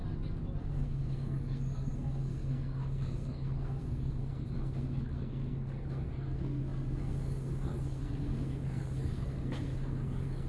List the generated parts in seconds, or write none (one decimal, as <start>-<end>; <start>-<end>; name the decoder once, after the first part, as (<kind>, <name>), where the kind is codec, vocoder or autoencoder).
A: 0.6-10.5 (codec, SNAC)